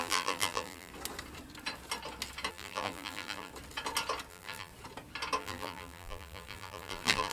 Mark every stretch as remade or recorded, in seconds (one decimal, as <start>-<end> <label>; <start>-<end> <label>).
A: 0.0-0.9 remade; 0.9-2.5 recorded; 2.5-3.5 remade; 3.5-4.3 recorded; 4.3-4.7 remade; 4.7-5.4 recorded; 5.4-7.3 remade